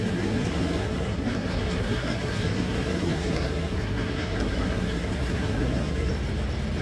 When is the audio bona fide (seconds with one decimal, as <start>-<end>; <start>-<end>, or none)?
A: 6.1-6.8